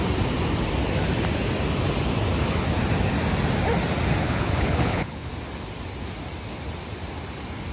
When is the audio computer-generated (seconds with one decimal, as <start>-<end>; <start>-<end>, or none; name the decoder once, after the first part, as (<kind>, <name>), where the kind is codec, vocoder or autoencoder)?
4.2-5.3 (codec, HILCodec)